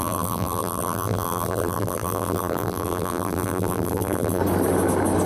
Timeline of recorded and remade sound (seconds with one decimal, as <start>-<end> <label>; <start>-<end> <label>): 0.0-4.4 remade; 4.4-5.3 recorded